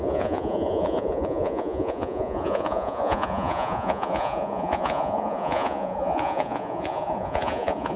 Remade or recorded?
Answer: remade